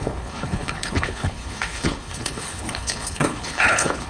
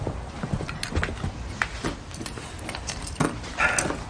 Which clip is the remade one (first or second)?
first